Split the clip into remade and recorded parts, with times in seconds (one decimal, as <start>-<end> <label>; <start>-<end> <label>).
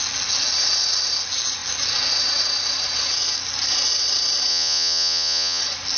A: 0.0-4.5 recorded; 4.5-5.6 remade; 5.6-6.0 recorded